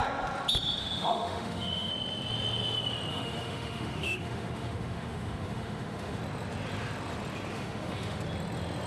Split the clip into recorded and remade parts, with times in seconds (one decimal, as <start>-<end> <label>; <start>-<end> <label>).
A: 0.0-0.8 recorded; 0.8-1.9 remade; 1.9-3.1 recorded; 3.1-6.2 remade; 6.2-7.5 recorded; 7.5-8.2 remade; 8.2-8.9 recorded